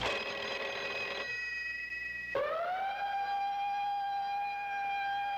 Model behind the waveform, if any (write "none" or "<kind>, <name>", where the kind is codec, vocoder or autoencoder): none